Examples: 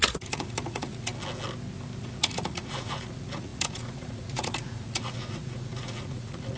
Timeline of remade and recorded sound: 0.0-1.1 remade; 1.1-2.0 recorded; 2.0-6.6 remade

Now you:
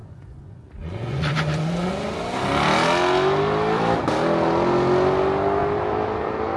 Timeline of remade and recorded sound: 0.0-1.9 remade; 1.9-6.6 recorded

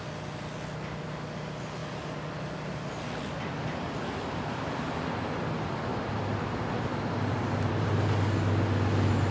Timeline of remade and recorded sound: 0.0-9.3 recorded